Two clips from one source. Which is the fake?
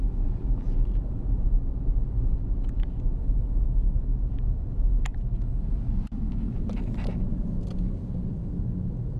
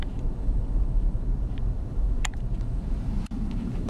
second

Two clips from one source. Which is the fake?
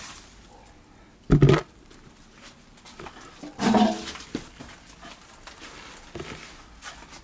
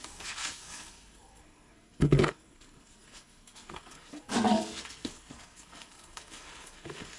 second